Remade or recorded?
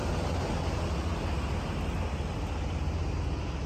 recorded